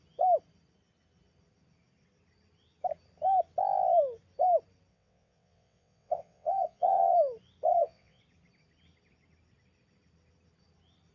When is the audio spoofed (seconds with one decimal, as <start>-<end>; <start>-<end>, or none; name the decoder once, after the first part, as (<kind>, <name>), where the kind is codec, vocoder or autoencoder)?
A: 4.9-7.1 (vocoder, WaveNeXt); 7.7-8.2